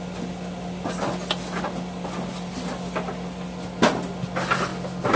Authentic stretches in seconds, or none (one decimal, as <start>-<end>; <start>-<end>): 0.0-5.2